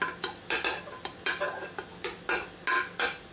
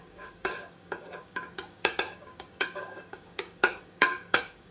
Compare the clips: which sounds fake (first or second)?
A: second